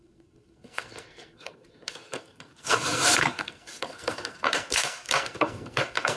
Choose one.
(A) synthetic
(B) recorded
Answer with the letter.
A